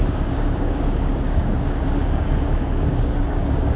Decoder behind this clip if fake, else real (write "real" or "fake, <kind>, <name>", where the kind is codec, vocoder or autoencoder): fake, codec, DAC